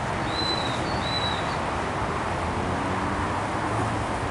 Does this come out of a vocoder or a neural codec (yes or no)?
no